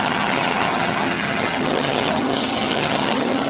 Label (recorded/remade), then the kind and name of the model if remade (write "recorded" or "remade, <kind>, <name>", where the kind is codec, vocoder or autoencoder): remade, vocoder, HiFi-GAN